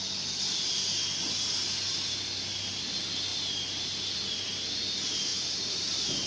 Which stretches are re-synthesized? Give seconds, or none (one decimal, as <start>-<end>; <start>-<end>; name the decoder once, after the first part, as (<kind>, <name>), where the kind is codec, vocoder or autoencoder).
5.3-6.3 (vocoder, BigVGAN v2)